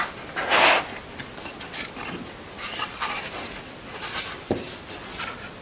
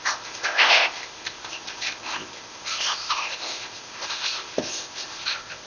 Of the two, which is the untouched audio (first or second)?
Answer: first